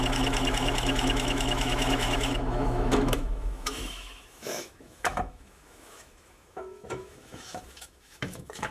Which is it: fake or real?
fake